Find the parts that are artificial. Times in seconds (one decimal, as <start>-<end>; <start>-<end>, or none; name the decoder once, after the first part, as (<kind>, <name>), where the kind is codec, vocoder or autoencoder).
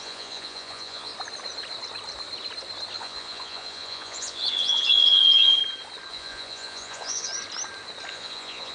0.0-1.1 (vocoder, Vocos); 3.0-5.6; 6.1-7.3; 8.1-8.7